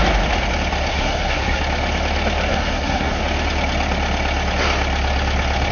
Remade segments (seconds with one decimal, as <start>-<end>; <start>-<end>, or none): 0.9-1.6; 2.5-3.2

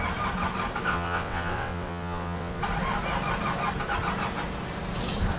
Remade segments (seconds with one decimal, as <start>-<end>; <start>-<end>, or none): 0.9-2.6

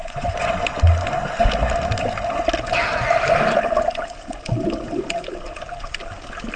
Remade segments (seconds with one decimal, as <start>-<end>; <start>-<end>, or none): 0.0-0.5

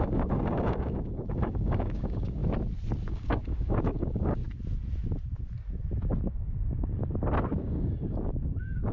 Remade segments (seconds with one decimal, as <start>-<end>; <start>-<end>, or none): 0.0-2.4; 3.1-4.4; 6.2-7.0; 7.6-8.9

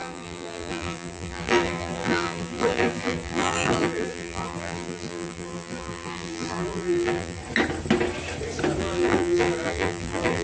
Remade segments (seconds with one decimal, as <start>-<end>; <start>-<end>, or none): 0.0-7.4; 8.8-10.4

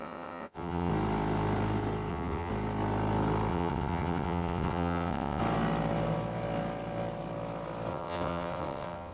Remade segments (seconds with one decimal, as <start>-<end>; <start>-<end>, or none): 0.0-0.9; 2.1-2.5; 3.5-5.4; 7.9-9.1

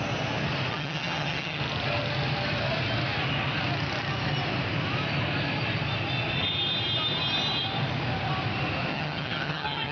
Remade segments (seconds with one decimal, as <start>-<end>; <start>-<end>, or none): 0.7-1.6; 8.9-9.9

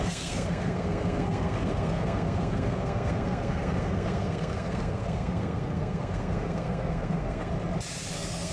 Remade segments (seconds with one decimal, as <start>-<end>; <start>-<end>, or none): 0.0-7.5; 8.1-8.5